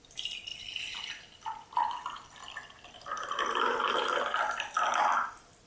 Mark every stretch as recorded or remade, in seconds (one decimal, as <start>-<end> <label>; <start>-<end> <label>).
0.0-5.7 recorded